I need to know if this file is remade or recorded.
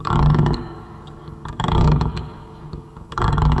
remade